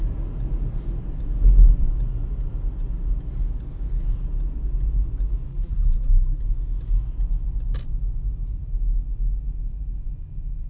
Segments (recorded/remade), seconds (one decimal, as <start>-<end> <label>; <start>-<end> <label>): 0.0-5.5 recorded; 5.5-6.4 remade; 6.4-10.7 recorded